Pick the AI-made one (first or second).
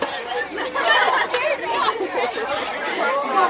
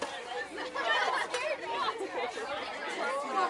first